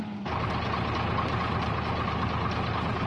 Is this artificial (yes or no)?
no